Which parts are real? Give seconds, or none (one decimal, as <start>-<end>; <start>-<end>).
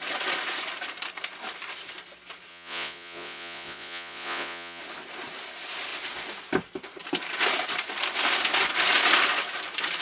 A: 0.0-2.5; 4.8-10.0